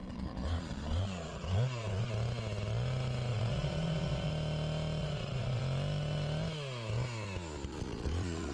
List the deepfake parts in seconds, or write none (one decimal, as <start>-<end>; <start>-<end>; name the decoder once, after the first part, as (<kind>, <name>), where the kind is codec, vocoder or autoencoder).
0.0-2.1 (vocoder, Vocos); 3.3-4.3; 5.0-5.6; 7.7-8.5